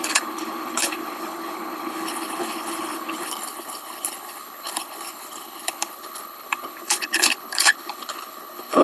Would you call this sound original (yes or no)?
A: no